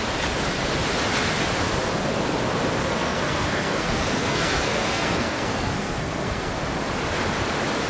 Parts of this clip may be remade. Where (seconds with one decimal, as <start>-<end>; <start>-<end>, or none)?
2.8-6.5